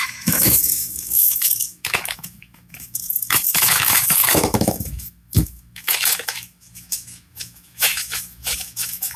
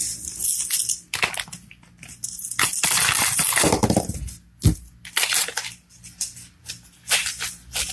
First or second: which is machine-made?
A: first